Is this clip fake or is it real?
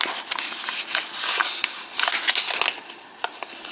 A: real